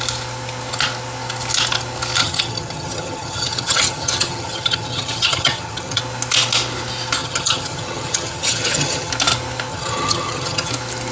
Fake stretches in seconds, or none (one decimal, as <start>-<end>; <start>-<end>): 2.2-6.0; 7.2-9.1; 9.7-10.7